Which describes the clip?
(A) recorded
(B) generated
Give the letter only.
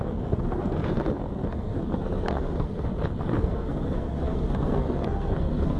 B